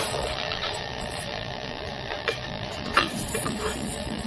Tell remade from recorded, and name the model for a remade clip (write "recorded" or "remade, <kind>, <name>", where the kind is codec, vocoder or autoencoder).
remade, vocoder, Vocos